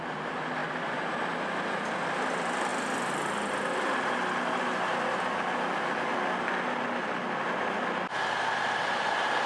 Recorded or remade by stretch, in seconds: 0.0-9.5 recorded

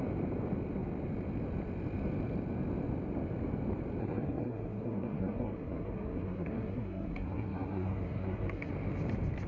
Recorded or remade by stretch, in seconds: 0.0-4.0 recorded; 4.0-8.7 remade; 8.7-9.5 recorded